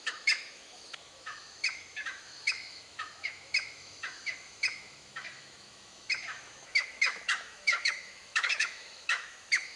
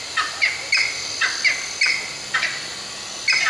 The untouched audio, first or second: second